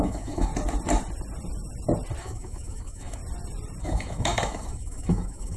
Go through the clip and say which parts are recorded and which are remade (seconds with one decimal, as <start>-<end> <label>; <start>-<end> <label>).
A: 0.0-0.5 remade; 0.5-2.2 recorded; 2.2-3.2 remade; 3.2-3.8 recorded; 3.8-5.6 remade